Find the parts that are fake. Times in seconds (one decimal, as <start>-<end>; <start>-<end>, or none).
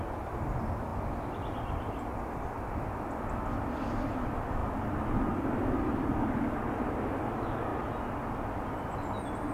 4.6-6.9